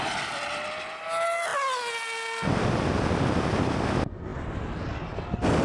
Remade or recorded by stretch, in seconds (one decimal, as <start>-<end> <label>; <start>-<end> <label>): 0.0-5.6 recorded

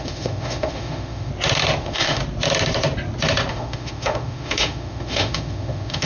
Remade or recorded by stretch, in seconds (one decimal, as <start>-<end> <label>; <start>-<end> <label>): 0.0-1.3 remade; 1.3-1.8 recorded; 1.8-2.2 remade; 2.2-3.5 recorded; 3.5-6.1 remade

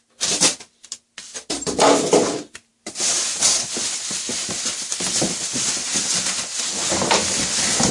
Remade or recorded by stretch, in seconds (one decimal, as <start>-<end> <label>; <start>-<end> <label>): 0.0-7.9 recorded

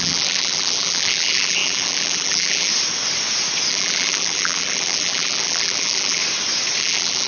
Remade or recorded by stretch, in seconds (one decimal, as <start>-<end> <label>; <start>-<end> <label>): 0.0-2.7 remade; 2.7-3.7 recorded; 3.7-6.2 remade; 6.2-6.8 recorded; 6.8-7.3 remade

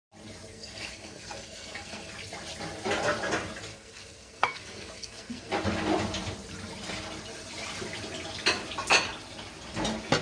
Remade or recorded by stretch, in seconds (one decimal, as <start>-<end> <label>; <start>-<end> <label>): 0.0-0.5 recorded; 0.5-2.1 remade; 2.1-3.7 recorded; 3.7-5.5 remade; 5.5-10.2 recorded

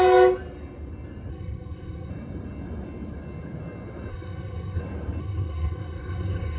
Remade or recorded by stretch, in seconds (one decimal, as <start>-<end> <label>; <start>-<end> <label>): 0.0-1.3 recorded; 1.3-2.1 remade; 2.1-4.1 recorded; 4.1-4.8 remade; 4.8-5.2 recorded; 5.2-6.6 remade